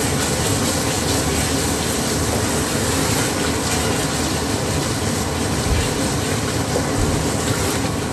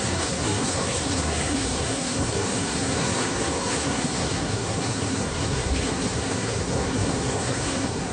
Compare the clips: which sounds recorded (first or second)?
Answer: first